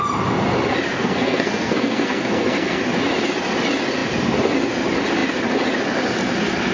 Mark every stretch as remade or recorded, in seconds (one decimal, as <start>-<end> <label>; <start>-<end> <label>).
0.0-0.9 recorded; 0.9-2.8 remade; 2.8-6.7 recorded